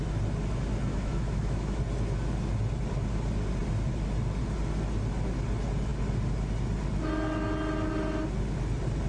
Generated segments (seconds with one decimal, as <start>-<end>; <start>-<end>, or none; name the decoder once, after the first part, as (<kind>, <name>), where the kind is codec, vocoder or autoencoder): 0.9-1.8 (autoencoder, DAC-VAE)